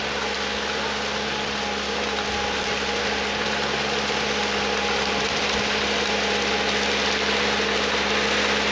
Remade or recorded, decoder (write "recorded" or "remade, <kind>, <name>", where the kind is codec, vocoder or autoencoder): recorded